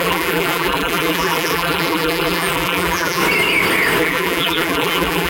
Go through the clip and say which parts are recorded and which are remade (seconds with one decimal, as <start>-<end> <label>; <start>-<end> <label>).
0.0-3.2 remade; 3.2-4.0 recorded; 4.0-5.3 remade